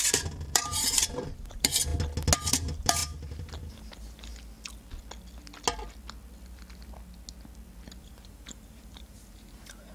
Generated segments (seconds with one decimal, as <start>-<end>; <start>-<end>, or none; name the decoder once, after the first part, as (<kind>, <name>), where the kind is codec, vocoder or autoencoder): 0.0-1.9 (vocoder, BigVGAN v2); 2.5-4.3; 8.0-9.9